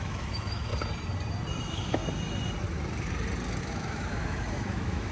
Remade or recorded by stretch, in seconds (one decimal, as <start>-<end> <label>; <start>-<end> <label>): 0.0-0.7 remade; 0.7-1.6 recorded; 1.6-2.0 remade; 2.0-3.6 recorded; 3.6-5.1 remade